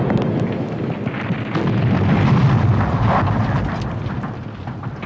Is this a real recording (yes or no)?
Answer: yes